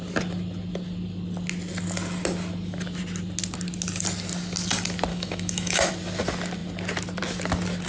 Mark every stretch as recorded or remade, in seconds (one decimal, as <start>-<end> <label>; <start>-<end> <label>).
0.0-5.1 recorded; 5.1-5.9 remade; 5.9-7.9 recorded